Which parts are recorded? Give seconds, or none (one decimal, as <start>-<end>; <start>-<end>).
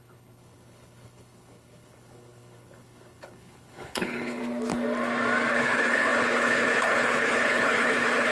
4.4-5.5